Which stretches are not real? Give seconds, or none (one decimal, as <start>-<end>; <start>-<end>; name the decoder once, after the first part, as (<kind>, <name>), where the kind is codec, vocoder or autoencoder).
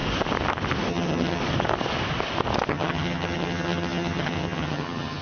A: 0.9-1.4 (vocoder, HiFi-GAN); 2.7-5.2